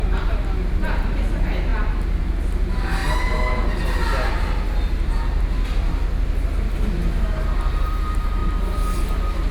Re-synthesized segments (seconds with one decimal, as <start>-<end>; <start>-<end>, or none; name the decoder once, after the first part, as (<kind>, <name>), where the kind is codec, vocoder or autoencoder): none